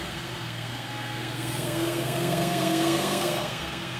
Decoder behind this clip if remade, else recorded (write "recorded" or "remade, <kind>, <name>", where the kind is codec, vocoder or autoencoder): remade, codec, SNAC